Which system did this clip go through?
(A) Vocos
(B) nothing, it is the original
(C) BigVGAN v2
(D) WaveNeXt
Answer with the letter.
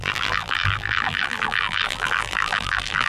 C